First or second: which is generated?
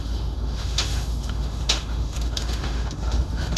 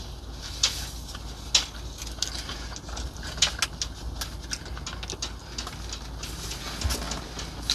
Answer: first